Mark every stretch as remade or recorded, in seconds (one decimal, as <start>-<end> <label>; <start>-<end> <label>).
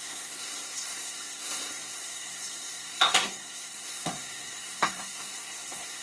0.0-6.0 remade